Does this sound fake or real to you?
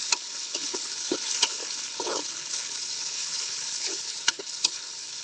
fake